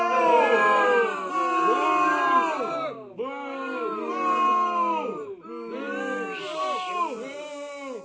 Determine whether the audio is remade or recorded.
recorded